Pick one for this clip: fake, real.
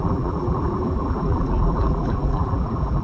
fake